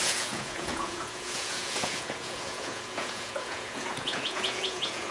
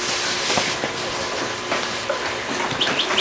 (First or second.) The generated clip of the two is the first